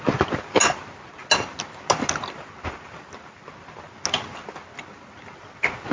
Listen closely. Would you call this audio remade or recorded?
recorded